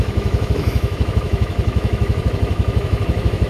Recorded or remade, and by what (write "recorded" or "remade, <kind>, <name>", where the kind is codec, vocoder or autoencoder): remade, autoencoder, DAC-VAE